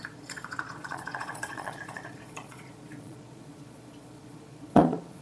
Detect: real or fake fake